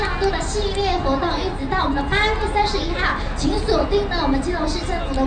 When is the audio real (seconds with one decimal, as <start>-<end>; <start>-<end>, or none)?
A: 0.0-5.3